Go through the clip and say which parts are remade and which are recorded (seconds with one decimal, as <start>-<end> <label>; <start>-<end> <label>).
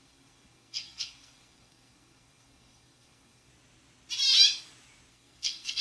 0.0-3.5 remade; 3.5-5.1 recorded; 5.1-5.8 remade